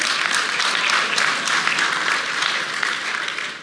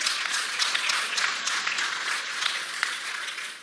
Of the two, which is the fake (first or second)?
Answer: second